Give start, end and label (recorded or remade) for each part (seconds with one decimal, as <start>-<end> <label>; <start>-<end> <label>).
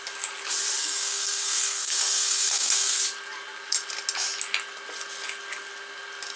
0.0-0.8 recorded; 0.8-3.0 remade; 3.0-6.4 recorded